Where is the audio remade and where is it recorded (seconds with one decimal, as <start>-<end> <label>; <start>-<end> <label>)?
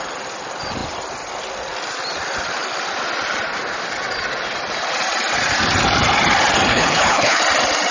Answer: 0.0-6.7 recorded; 6.7-7.4 remade; 7.4-7.9 recorded